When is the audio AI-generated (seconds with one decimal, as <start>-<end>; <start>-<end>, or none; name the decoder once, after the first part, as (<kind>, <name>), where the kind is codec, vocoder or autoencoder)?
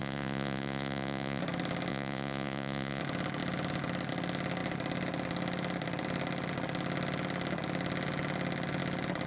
0.0-1.4 (vocoder, Vocos); 1.9-3.0